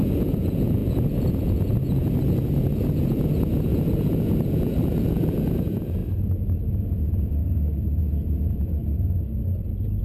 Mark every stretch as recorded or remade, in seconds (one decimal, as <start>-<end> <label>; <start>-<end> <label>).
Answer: 0.0-6.0 remade; 6.0-6.7 recorded; 6.7-7.4 remade; 7.4-8.0 recorded; 8.0-8.8 remade; 8.8-10.0 recorded